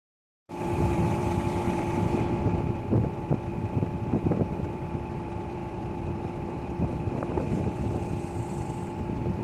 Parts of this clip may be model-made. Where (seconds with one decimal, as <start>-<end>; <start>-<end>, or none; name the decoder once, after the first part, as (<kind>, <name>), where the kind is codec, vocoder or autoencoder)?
0.0-3.5 (vocoder, BigVGAN v2); 4.5-9.4